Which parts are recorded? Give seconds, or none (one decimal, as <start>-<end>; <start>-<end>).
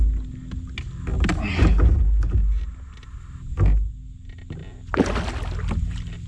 0.0-6.3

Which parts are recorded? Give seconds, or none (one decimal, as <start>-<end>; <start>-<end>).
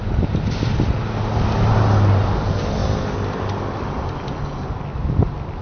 0.0-5.6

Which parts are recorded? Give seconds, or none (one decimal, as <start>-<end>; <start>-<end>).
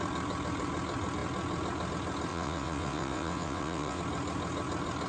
0.0-2.3; 4.0-5.1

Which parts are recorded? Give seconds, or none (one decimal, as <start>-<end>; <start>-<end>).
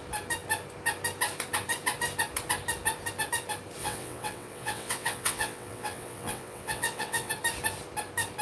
0.0-3.8; 7.3-8.4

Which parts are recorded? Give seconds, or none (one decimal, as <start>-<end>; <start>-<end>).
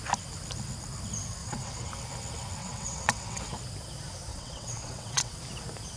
0.0-1.4; 1.9-2.6; 3.4-4.3; 5.4-6.0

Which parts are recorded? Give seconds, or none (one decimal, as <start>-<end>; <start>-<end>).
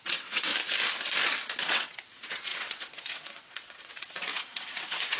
0.5-1.6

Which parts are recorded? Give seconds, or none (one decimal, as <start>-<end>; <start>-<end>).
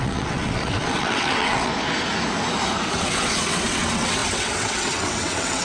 1.7-2.9